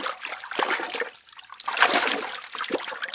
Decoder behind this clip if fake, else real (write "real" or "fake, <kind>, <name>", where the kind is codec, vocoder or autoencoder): real